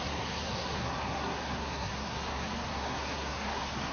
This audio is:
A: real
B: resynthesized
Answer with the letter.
B